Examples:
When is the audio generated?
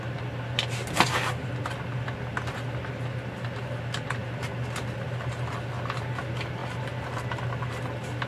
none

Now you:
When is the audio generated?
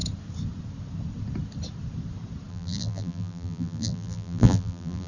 2.5-5.1 (vocoder, BigVGAN v2)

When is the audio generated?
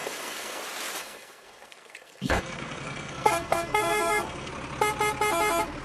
0.0-0.6 (codec, SNAC); 1.0-4.5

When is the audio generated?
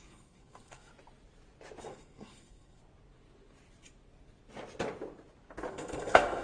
0.0-0.9 (codec, SNAC); 1.8-2.8; 5.7-6.4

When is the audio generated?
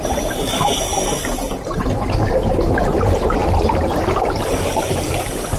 0.0-0.9 (vocoder, BigVGAN v2); 1.7-5.6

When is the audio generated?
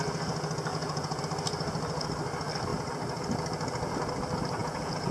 0.7-1.2 (vocoder, Vocos); 4.6-5.1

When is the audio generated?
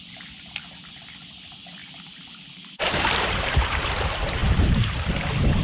1.8-3.9 (vocoder, BigVGAN v2); 4.4-5.0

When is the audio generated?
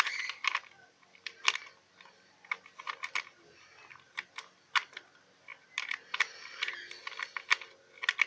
none